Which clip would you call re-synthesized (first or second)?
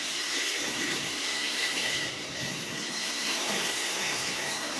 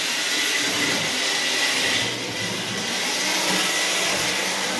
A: first